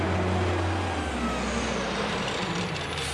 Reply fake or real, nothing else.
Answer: real